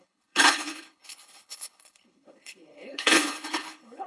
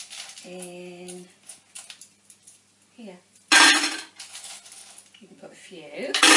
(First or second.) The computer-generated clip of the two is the first